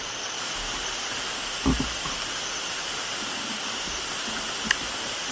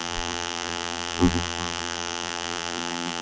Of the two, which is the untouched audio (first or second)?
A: first